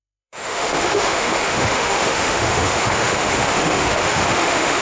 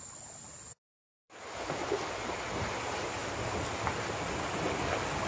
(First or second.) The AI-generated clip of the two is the first